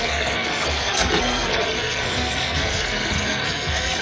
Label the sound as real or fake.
fake